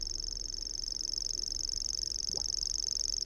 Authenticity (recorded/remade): recorded